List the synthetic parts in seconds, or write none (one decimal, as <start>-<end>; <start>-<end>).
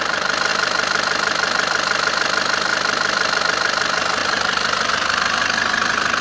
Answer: 0.5-2.1; 2.7-3.4; 4.2-4.9